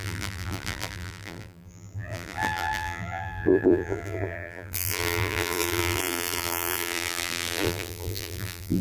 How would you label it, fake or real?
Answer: fake